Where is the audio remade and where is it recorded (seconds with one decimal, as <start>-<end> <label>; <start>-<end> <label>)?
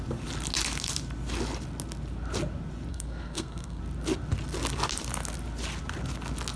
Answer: 0.0-2.9 recorded; 2.9-3.8 remade; 3.8-6.6 recorded